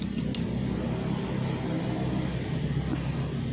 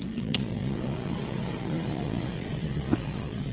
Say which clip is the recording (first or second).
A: first